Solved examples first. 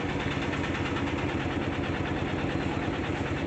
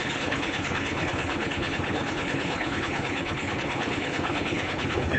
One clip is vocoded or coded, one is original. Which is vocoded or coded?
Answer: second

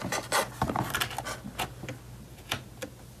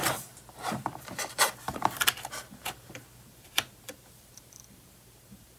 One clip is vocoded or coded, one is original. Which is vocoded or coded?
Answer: second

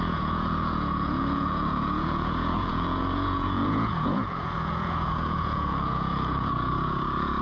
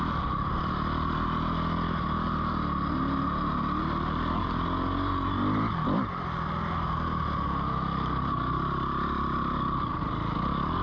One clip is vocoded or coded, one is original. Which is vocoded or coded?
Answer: first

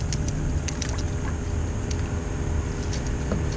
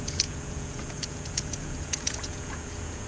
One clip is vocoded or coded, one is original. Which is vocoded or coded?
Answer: second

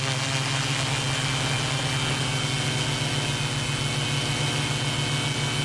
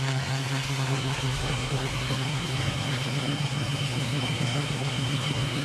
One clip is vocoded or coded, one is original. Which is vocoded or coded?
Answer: second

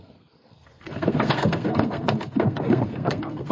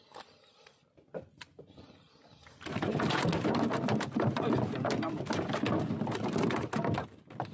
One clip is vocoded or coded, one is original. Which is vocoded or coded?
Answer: first